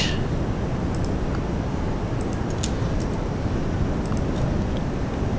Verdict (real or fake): real